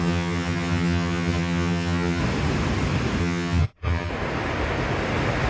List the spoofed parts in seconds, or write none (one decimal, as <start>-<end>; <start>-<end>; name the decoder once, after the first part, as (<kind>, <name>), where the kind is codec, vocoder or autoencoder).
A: 0.0-2.2 (vocoder, HiFi-GAN); 3.2-4.1